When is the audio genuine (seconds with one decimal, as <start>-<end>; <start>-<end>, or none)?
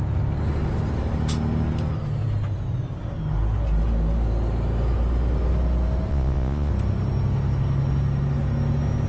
0.0-6.1; 6.7-9.1